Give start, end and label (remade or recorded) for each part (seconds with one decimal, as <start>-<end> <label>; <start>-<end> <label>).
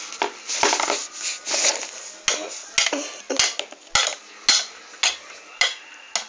0.0-6.3 recorded